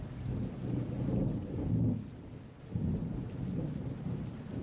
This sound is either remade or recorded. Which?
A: recorded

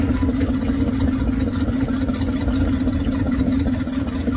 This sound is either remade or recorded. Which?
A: recorded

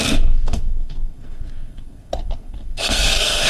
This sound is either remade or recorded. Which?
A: remade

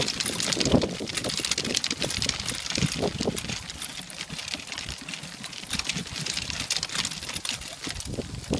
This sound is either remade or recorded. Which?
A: recorded